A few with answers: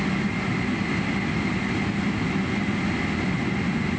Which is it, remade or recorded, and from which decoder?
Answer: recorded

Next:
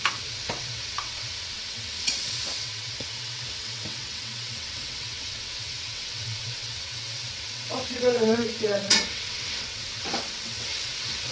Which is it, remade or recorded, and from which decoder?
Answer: remade, vocoder, WaveNeXt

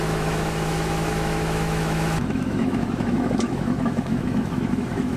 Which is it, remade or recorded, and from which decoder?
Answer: remade, autoencoder, DAC-VAE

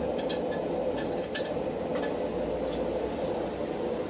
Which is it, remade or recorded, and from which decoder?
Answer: recorded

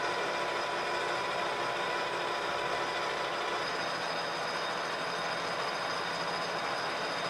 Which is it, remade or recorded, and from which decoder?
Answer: recorded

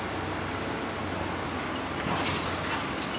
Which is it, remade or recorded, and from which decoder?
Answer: recorded